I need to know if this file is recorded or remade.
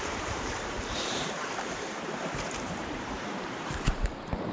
remade